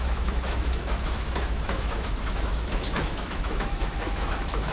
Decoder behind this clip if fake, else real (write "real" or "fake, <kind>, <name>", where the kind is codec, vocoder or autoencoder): fake, autoencoder, DAC-VAE